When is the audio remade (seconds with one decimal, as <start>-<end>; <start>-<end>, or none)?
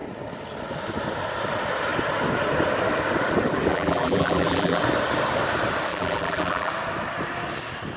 3.7-4.8; 5.9-6.7